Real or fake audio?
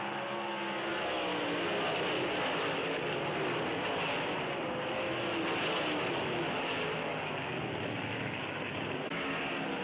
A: real